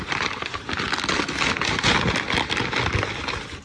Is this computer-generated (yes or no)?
no